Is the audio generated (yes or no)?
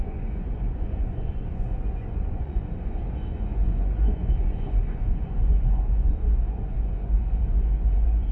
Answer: yes